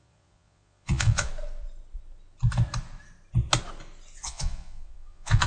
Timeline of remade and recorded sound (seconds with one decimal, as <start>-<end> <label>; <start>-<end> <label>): 0.0-1.3 remade; 1.3-4.2 recorded; 4.2-5.5 remade